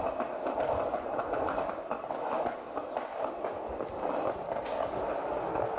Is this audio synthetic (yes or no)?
no